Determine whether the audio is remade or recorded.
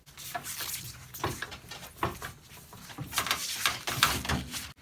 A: recorded